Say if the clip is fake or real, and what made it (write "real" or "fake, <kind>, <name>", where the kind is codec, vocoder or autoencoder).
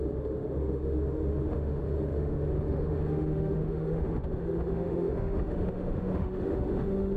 fake, autoencoder, DAC-VAE